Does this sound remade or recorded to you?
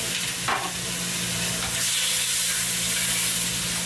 recorded